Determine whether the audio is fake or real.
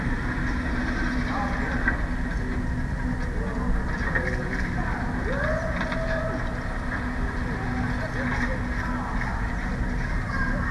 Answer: real